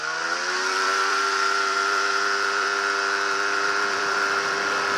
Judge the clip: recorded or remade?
remade